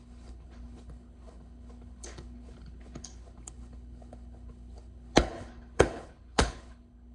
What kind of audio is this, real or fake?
fake